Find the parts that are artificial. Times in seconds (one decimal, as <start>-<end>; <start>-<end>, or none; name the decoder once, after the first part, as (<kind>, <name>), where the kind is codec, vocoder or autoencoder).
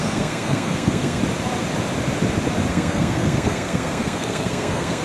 0.0-1.2 (codec, SNAC); 2.7-5.0